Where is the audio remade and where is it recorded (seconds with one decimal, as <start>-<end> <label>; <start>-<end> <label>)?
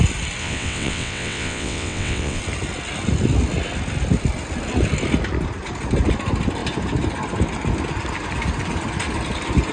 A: 0.0-0.4 recorded; 0.4-2.4 remade; 2.4-9.7 recorded